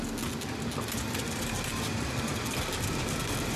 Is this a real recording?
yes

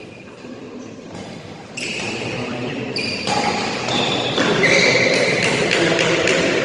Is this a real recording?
no